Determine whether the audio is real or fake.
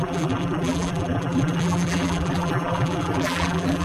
fake